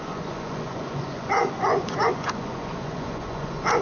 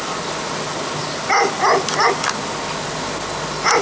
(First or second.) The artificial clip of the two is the first